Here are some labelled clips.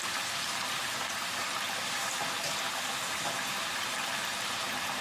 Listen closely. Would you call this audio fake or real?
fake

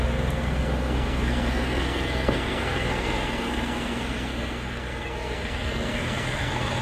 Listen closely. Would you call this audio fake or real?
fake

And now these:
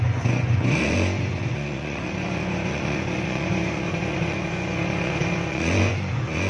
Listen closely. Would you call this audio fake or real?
fake